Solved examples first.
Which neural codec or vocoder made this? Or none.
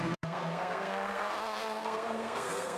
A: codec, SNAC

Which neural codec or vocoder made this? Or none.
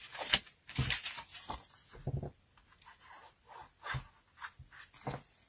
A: none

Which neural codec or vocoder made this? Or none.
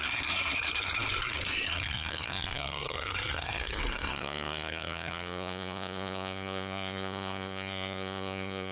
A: codec, SNAC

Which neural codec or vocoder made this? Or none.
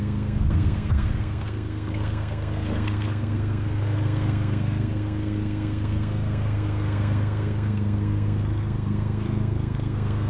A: codec, SNAC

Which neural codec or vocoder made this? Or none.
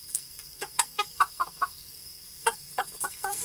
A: codec, SNAC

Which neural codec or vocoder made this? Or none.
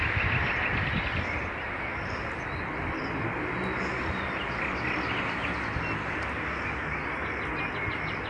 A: none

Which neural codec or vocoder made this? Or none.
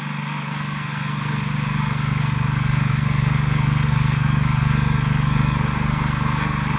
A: codec, SNAC